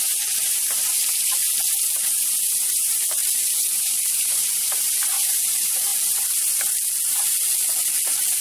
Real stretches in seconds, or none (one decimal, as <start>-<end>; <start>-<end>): 1.4-2.5; 5.9-8.0

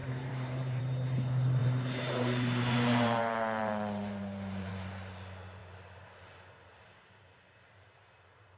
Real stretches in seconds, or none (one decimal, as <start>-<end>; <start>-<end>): 0.8-1.6; 5.1-8.6